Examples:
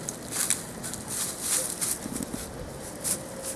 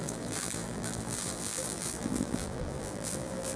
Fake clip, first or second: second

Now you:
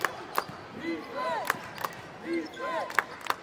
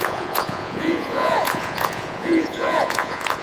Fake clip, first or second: second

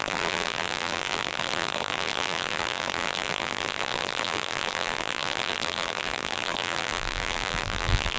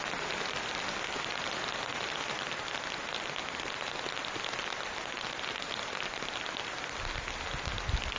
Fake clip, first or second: first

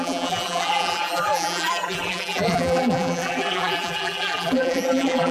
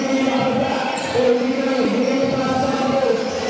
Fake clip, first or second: first